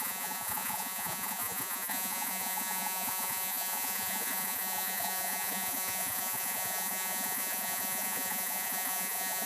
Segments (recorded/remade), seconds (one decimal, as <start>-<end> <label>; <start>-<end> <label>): 0.0-9.5 remade